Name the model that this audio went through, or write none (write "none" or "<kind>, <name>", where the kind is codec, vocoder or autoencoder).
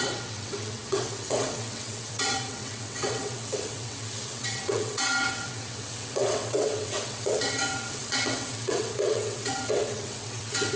vocoder, WaveNeXt